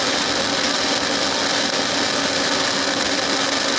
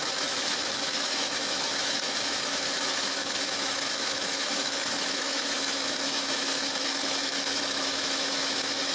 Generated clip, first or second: second